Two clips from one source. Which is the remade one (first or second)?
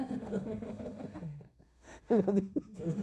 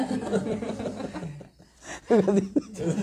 first